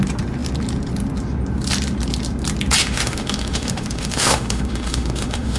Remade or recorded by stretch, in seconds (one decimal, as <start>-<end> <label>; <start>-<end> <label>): 0.0-2.8 recorded; 2.8-5.6 remade